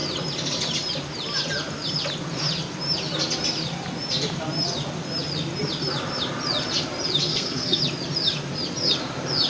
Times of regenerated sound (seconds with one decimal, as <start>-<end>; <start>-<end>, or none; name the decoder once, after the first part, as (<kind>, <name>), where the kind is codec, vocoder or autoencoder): 7.3-7.8 (codec, SNAC)